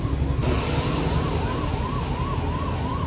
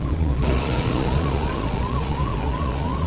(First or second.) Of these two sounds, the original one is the first